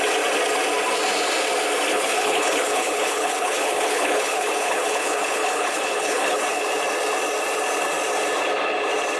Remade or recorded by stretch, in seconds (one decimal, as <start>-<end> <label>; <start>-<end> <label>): 0.0-1.9 recorded; 1.9-6.6 remade; 6.6-9.2 recorded